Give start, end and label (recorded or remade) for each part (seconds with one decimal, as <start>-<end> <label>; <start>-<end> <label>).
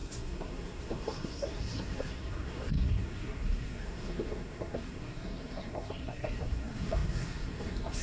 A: 0.0-8.0 remade